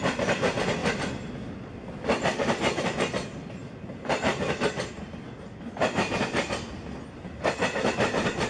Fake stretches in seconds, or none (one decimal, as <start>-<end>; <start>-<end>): 3.6-4.5